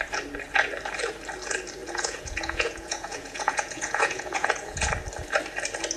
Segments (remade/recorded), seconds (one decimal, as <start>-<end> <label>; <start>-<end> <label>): 0.0-1.8 recorded; 1.8-4.9 remade; 4.9-6.0 recorded